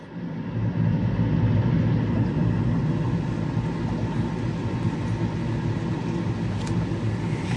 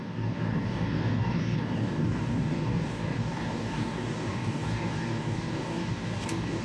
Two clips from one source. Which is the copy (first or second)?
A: second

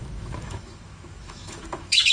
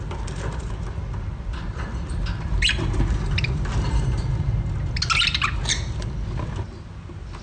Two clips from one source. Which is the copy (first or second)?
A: first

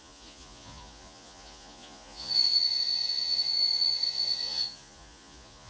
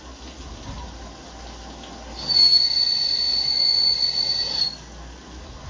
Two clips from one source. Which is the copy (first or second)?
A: first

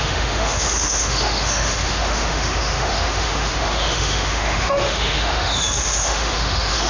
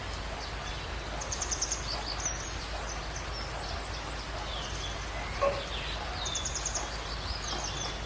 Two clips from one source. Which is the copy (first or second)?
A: first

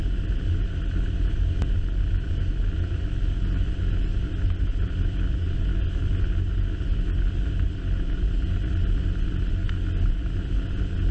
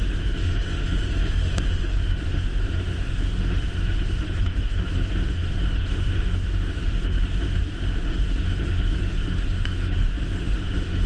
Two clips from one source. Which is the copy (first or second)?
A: second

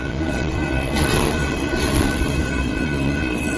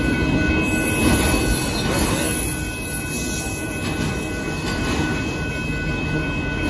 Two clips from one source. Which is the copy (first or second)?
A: first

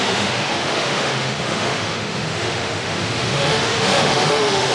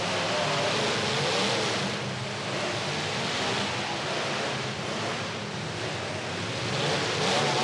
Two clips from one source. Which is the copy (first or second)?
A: first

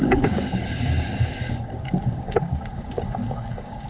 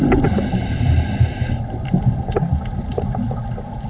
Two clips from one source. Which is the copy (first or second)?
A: first